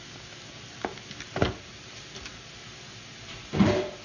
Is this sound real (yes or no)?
yes